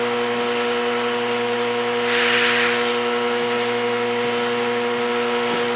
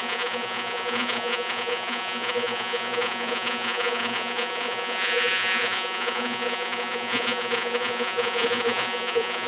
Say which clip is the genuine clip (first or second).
first